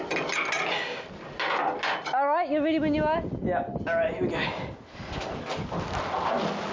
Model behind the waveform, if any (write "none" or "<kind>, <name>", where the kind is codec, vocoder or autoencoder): none